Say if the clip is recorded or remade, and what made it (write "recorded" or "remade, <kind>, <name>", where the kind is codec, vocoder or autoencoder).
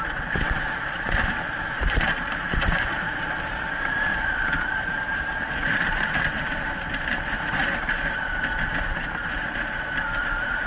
remade, vocoder, BigVGAN v2